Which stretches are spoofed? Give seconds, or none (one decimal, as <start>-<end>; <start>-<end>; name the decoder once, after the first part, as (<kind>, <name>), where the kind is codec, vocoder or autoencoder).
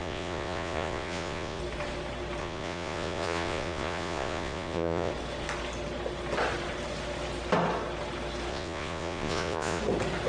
0.0-1.6 (vocoder, Vocos); 2.4-5.1; 8.5-9.8